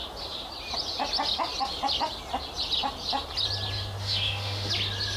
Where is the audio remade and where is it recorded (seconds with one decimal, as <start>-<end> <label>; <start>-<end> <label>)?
0.0-4.0 recorded; 4.0-4.7 remade; 4.7-5.2 recorded